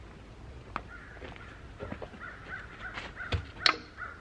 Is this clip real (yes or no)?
yes